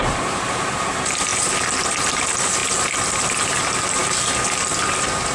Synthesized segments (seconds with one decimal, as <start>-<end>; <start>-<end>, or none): 0.0-1.3; 2.2-4.0

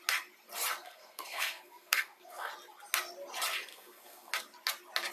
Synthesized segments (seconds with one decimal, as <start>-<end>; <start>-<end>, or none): 0.8-2.5; 3.7-4.3

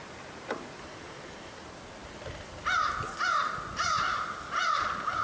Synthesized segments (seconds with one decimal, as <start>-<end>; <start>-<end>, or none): none

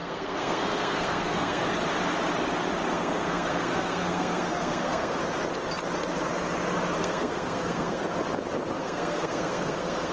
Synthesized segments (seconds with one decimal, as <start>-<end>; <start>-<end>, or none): 0.0-1.8; 2.9-5.2; 7.0-8.1; 8.8-10.1

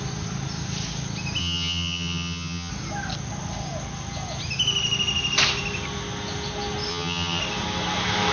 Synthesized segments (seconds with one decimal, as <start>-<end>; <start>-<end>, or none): 1.4-2.7; 6.9-7.4

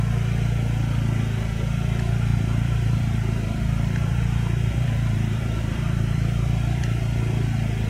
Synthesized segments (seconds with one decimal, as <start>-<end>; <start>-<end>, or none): 2.3-7.0

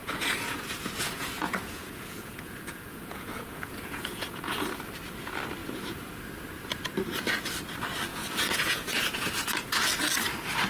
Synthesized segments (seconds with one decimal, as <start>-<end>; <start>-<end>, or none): 0.0-4.6; 5.6-6.1; 8.1-9.3